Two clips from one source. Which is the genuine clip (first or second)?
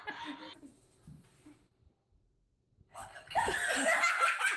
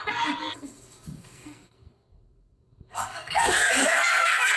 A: first